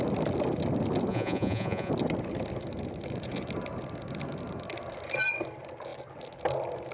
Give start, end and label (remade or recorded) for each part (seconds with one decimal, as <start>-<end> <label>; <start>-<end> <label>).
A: 0.0-1.1 recorded; 1.1-1.9 remade; 1.9-6.9 recorded